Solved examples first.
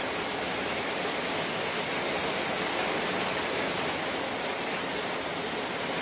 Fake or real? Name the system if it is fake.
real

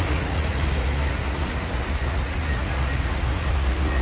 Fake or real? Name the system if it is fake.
fake, vocoder, Vocos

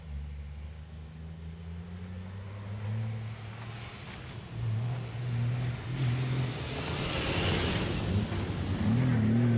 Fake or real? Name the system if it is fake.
real